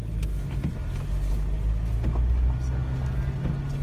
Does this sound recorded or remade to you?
recorded